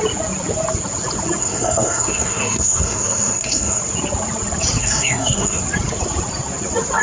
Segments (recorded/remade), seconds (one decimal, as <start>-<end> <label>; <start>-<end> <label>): 0.0-1.4 recorded; 1.4-3.8 remade; 3.8-4.8 recorded; 4.8-5.6 remade; 5.6-7.0 recorded